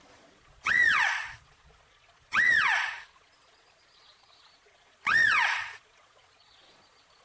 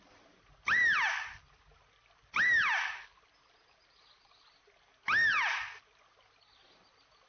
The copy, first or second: first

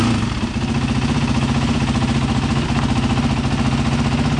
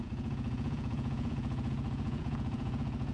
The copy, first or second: second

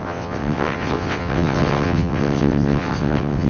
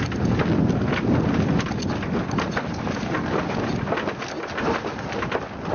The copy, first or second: first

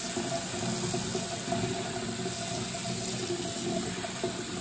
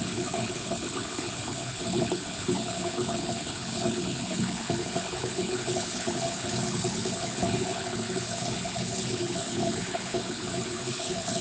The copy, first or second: second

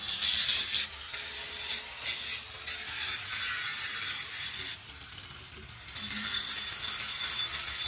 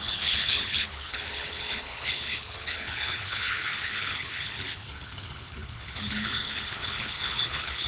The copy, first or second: second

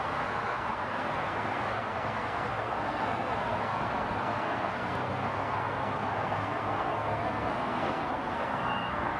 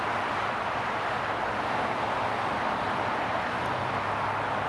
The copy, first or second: first